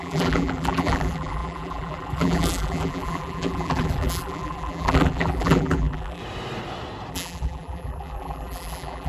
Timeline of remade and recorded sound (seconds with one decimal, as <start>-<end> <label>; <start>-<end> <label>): 0.0-6.2 remade; 6.2-7.1 recorded; 7.1-9.1 remade

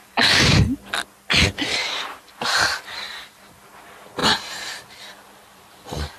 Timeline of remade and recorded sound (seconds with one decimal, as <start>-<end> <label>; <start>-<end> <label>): 0.0-0.6 remade; 0.6-1.8 recorded; 1.8-3.3 remade; 3.3-4.2 recorded; 4.2-6.2 remade

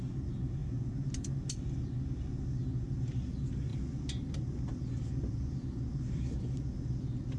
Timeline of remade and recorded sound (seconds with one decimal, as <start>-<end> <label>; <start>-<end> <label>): 0.0-3.7 recorded; 3.7-6.4 remade; 6.4-7.4 recorded

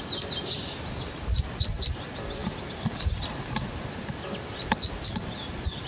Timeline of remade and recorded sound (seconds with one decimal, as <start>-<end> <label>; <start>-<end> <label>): 0.0-5.9 recorded